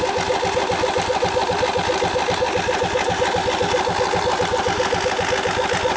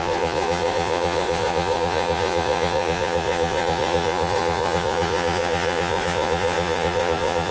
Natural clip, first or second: first